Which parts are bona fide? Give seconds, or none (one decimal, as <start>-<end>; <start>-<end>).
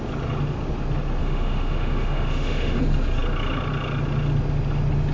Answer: 0.0-1.2; 2.8-5.1